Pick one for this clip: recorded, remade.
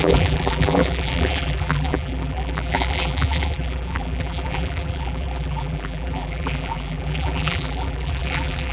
remade